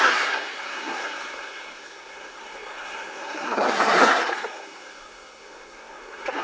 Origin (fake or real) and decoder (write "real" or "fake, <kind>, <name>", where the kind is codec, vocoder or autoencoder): fake, codec, SNAC